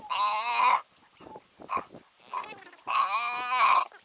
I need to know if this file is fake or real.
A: real